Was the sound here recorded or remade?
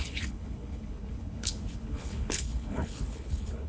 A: remade